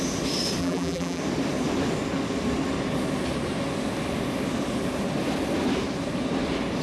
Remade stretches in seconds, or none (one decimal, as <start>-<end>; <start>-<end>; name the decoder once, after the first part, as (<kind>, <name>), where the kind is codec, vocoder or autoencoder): 0.6-1.2 (vocoder, BigVGAN v2)